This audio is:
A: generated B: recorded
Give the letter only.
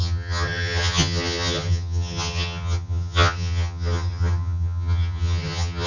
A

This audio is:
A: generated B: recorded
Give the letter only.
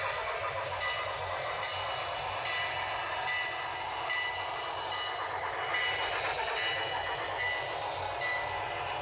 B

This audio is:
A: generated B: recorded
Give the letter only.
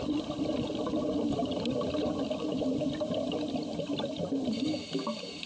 B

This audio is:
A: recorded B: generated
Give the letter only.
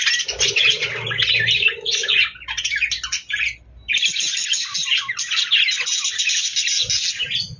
A